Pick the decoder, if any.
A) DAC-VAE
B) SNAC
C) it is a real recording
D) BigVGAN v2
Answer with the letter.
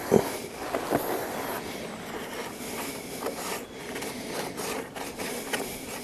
C